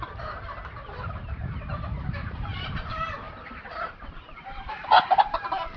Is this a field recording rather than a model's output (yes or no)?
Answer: no